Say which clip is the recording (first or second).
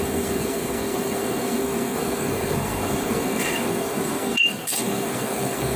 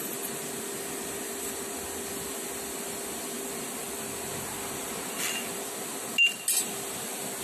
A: second